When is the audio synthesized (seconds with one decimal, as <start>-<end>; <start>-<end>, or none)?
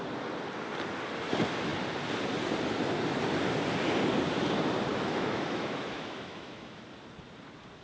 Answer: 4.9-6.8